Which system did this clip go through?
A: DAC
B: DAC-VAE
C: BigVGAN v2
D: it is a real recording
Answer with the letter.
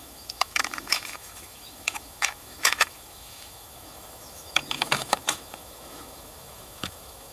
B